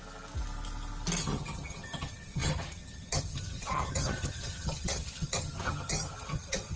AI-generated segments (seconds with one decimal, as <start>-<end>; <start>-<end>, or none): 1.2-6.8